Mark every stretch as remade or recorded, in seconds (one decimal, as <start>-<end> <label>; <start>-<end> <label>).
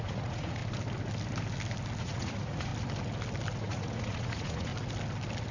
0.0-0.6 remade; 0.6-2.0 recorded; 2.0-2.7 remade; 2.7-3.6 recorded; 3.6-4.7 remade; 4.7-5.5 recorded